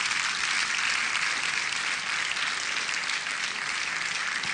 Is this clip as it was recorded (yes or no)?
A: yes